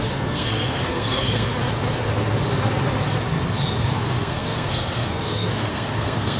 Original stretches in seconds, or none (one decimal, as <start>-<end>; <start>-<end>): 1.5-3.8